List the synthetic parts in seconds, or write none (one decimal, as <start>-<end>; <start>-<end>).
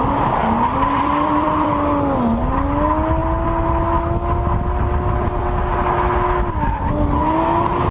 0.4-1.7